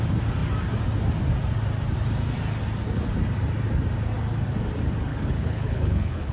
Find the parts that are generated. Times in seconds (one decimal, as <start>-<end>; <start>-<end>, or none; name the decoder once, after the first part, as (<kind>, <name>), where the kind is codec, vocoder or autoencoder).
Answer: 5.1-6.3 (codec, HILCodec)